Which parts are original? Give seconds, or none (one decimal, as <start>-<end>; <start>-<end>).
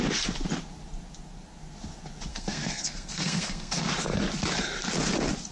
0.0-2.3; 3.9-5.5